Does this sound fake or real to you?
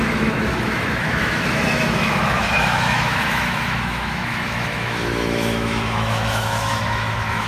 fake